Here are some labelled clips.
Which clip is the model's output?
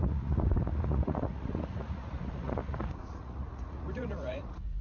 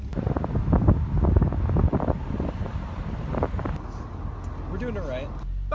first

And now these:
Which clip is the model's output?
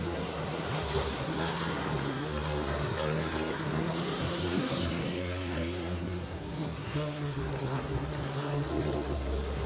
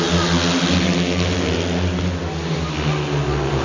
first